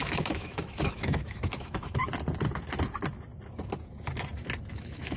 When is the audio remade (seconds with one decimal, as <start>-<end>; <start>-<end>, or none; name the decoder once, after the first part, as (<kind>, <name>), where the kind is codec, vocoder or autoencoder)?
0.0-2.0 (autoencoder, DAC-VAE); 4.7-5.2